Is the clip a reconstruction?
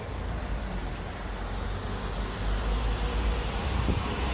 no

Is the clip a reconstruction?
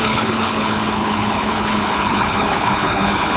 yes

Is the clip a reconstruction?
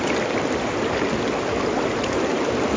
no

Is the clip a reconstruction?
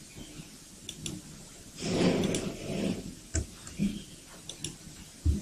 no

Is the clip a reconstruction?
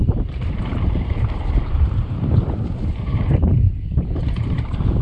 yes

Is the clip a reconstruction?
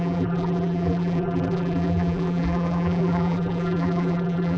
yes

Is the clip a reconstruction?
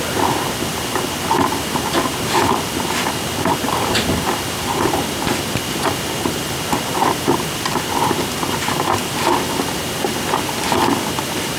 no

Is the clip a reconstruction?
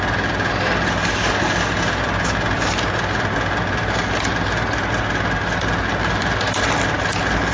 no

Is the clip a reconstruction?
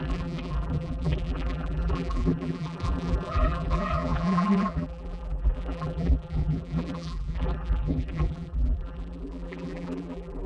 yes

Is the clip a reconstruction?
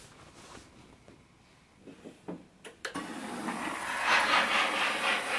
no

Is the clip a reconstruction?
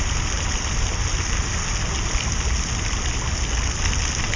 no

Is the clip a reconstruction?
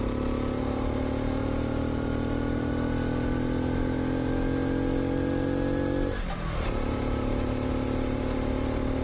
no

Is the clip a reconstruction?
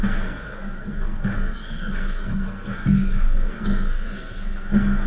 yes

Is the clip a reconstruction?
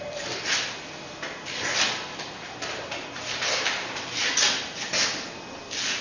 no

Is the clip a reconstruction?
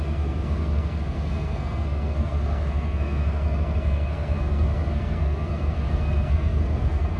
yes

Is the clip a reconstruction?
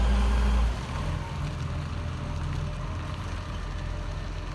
no